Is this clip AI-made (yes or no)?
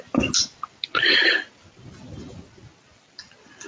no